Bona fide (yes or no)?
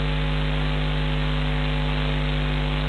yes